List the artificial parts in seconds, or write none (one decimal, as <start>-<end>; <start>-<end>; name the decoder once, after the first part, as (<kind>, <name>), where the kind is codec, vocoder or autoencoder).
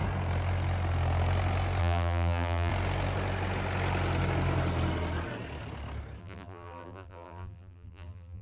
1.8-2.7 (vocoder, BigVGAN v2); 6.2-8.4